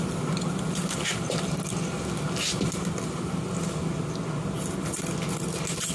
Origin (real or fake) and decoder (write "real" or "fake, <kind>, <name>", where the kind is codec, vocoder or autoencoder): real